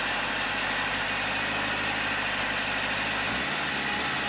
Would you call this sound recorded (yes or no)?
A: yes